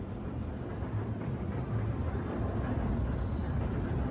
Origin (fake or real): real